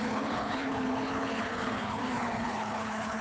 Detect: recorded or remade remade